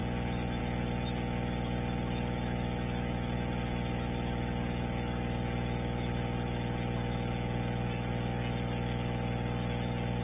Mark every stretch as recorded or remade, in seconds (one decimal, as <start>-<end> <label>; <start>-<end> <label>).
0.0-10.2 recorded